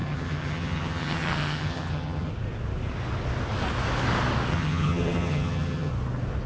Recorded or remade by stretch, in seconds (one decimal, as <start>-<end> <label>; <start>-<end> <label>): 0.0-2.3 remade; 2.3-4.5 recorded; 4.5-5.9 remade; 5.9-6.5 recorded

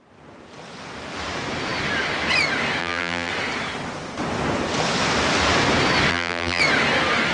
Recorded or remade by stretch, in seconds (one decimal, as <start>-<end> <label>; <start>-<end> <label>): 0.0-2.8 recorded; 2.8-3.3 remade; 3.3-6.1 recorded; 6.1-6.6 remade; 6.6-7.3 recorded